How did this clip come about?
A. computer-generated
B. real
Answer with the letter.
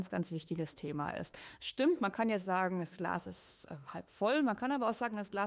A